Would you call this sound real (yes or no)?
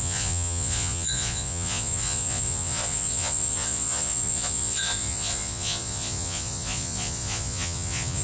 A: no